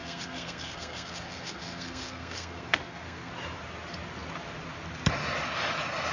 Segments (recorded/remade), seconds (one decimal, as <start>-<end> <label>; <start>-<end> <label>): 0.0-3.3 remade; 3.3-6.1 recorded